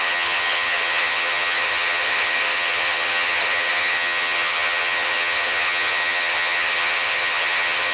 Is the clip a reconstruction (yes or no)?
yes